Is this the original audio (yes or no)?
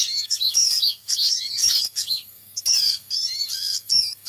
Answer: no